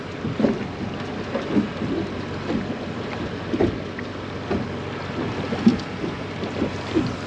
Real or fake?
real